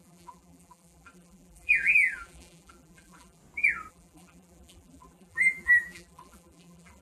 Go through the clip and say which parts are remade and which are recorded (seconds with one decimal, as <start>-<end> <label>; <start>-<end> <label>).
0.0-3.4 remade; 3.4-3.9 recorded; 3.9-7.0 remade